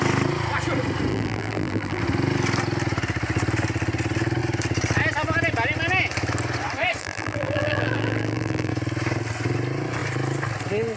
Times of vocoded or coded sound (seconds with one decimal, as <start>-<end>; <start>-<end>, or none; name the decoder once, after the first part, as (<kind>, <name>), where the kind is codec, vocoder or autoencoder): 1.1-2.0 (vocoder, BigVGAN v2); 7.0-8.7